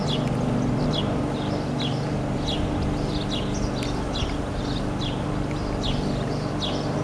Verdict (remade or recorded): recorded